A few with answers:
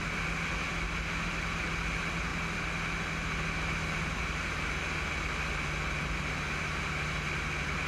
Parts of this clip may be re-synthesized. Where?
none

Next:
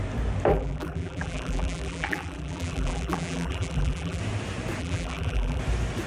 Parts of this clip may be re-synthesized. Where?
0.5-4.2 (vocoder, BigVGAN v2); 4.8-5.6

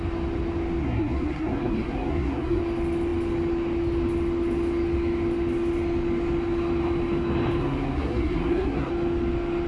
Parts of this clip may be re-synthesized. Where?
0.8-2.6 (codec, SNAC); 7.6-8.9

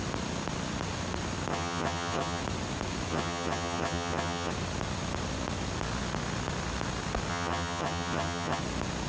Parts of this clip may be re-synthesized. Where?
1.5-2.4 (vocoder, HiFi-GAN); 3.1-4.5; 7.3-8.6

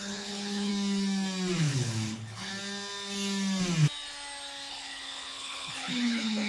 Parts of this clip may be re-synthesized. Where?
0.0-0.7 (codec, HILCodec); 1.6-2.5; 4.7-6.5

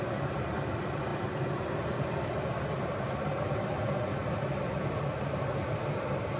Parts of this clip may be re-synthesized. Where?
none

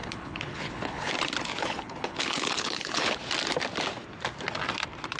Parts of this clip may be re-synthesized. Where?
0.0-1.1 (codec, HILCodec); 1.5-3.2